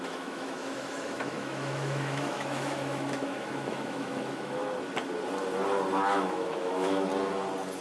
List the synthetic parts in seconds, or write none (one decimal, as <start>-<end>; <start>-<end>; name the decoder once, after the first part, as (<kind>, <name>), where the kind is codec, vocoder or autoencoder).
0.0-4.6 (autoencoder, DAC-VAE); 6.1-7.1